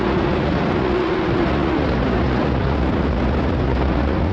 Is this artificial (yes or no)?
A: yes